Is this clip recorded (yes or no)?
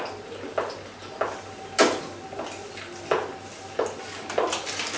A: yes